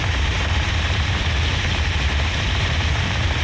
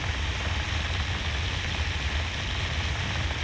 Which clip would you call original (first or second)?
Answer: second